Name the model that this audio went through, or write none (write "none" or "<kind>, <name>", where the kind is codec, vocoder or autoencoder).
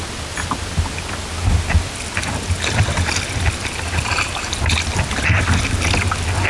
none